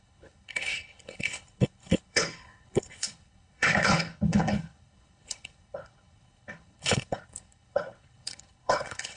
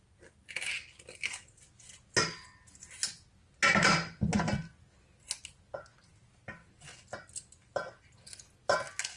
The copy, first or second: first